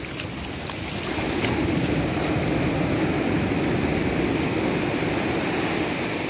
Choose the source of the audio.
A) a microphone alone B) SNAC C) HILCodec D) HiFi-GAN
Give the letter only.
A